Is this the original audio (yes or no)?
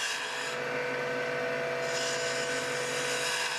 yes